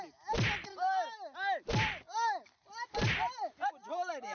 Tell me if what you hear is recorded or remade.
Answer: recorded